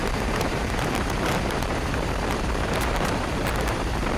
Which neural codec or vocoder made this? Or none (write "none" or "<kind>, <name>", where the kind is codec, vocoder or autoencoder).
vocoder, BigVGAN v2